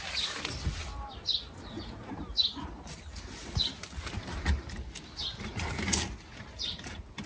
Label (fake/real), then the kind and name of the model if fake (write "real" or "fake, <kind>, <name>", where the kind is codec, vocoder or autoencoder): real